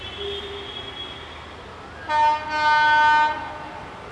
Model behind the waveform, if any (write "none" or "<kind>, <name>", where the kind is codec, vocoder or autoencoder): none